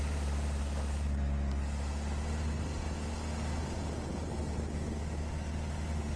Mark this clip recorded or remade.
recorded